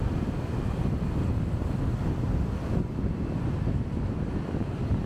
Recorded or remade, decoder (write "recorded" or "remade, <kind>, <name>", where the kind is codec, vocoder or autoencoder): recorded